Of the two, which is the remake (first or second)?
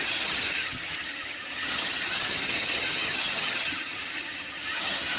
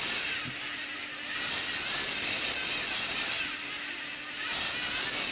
first